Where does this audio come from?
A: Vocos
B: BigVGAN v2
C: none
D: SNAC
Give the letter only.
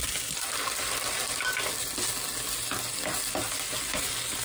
C